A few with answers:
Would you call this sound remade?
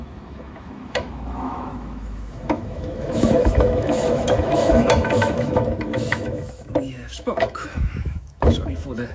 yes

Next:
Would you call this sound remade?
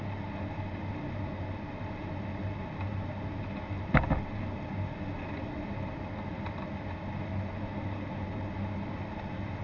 no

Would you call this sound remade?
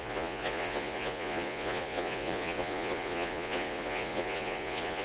yes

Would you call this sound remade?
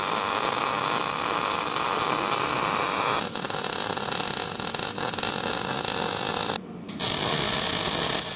no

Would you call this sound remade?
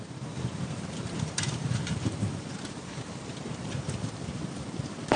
yes